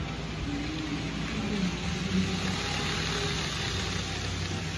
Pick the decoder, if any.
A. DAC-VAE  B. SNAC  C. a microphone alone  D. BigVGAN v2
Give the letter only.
C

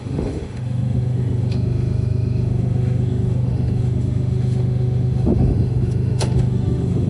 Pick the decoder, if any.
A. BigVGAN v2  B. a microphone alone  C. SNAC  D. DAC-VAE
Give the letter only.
D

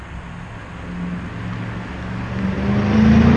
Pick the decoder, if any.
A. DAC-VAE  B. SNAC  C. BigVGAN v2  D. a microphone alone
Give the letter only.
D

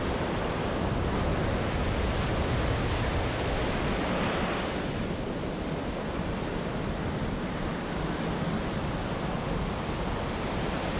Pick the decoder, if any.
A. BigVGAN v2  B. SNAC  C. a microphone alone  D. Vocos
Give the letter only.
C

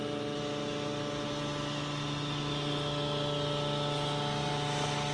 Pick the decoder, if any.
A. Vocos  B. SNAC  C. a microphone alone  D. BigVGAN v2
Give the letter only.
C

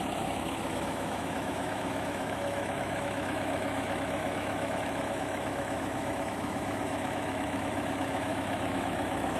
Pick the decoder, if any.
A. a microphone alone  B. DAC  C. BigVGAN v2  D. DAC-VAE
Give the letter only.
D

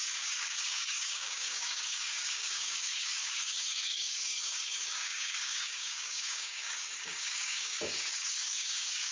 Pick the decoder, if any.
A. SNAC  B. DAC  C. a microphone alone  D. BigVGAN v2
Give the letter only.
B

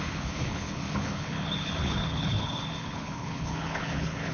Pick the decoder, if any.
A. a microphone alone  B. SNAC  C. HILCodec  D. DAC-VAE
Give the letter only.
C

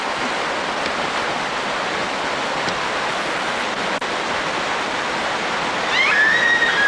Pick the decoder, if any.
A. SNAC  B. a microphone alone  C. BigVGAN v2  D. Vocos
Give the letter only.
B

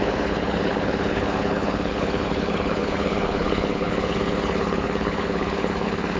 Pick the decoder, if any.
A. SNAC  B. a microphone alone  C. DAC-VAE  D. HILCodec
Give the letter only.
D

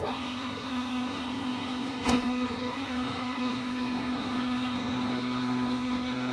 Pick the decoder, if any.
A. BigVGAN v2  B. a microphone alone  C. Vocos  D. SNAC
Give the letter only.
D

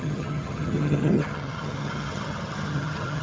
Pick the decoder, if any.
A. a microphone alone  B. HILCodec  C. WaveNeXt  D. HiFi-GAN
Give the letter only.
D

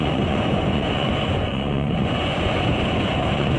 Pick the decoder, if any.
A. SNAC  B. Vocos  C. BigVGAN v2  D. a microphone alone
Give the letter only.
B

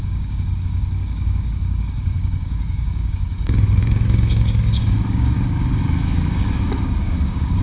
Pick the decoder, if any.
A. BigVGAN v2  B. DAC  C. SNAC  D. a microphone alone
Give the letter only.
B